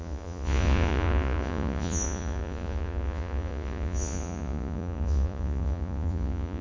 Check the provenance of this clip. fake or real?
fake